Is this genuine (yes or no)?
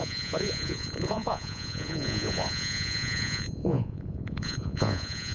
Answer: no